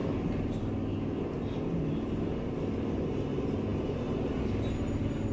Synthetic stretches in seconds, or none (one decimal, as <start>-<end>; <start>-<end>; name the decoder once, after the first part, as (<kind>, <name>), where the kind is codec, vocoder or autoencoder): 0.0-0.6 (vocoder, BigVGAN v2)